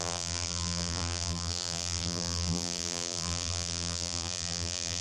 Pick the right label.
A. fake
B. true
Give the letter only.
A